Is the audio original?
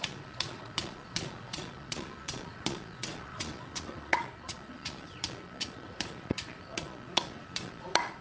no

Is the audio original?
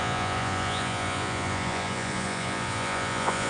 no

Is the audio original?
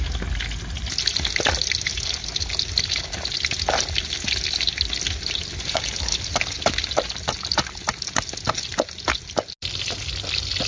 yes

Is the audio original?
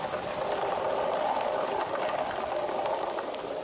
yes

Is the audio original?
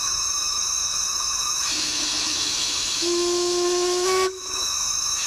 no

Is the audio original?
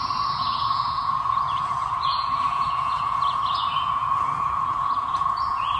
no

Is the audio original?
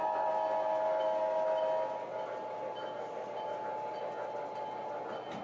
yes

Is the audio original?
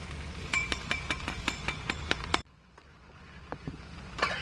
no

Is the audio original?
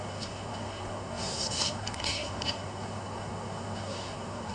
no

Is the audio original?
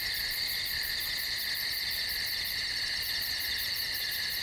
yes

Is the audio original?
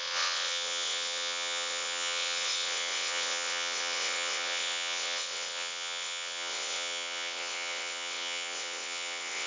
no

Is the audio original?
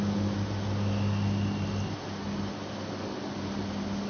yes